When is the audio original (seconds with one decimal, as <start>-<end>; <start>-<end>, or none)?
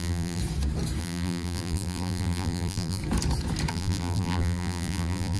0.4-1.0; 3.0-3.7